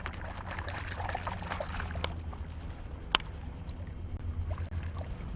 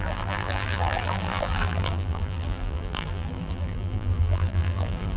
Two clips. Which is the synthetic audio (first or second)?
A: second